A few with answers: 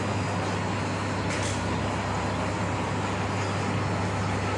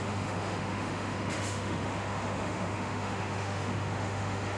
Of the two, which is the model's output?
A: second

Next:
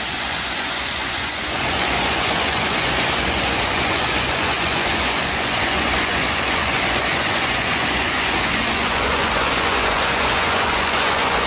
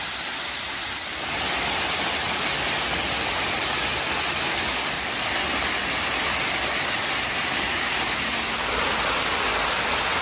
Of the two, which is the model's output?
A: first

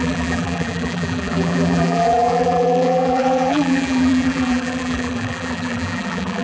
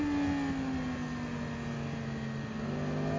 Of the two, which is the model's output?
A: first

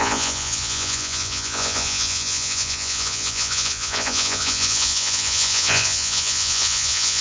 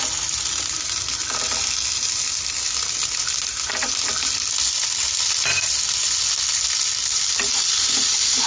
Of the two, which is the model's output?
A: first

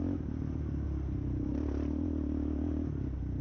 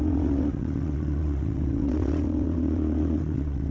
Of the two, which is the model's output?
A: second